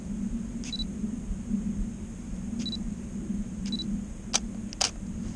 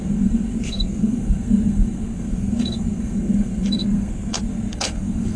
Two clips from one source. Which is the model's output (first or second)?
second